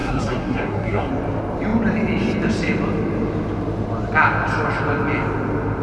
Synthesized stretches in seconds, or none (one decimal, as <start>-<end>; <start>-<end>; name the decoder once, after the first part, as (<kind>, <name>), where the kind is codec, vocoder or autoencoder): 0.0-1.1 (codec, SNAC)